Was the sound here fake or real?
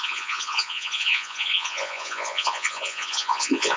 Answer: fake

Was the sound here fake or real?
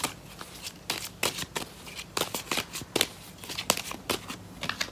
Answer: real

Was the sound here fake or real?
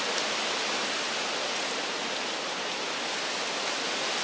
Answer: real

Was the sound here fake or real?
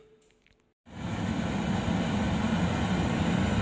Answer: real